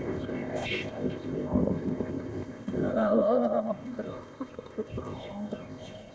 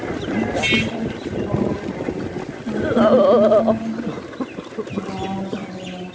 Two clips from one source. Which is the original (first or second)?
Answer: second